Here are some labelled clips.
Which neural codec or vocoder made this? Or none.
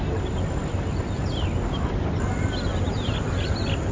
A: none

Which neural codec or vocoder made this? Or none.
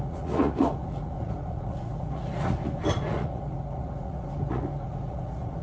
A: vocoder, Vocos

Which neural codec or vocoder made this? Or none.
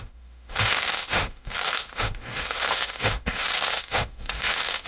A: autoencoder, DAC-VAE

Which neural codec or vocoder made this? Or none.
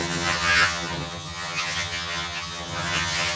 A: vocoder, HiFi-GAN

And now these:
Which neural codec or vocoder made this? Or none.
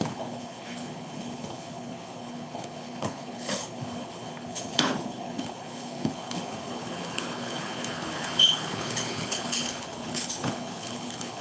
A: codec, HILCodec